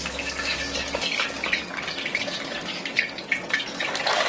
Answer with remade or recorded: remade